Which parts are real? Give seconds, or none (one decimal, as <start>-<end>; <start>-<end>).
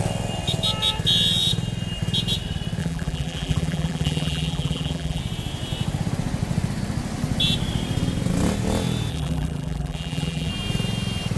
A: 0.0-2.8; 5.2-9.1; 10.5-11.4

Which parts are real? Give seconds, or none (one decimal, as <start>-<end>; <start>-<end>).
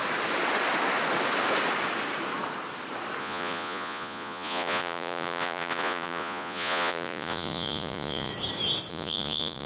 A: 0.0-3.2; 8.3-8.9